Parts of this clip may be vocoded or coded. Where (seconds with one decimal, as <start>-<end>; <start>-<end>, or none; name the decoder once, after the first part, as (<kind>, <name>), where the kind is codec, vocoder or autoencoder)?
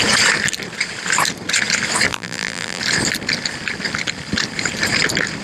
2.1-2.8 (vocoder, BigVGAN v2)